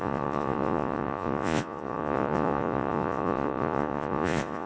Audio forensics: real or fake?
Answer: fake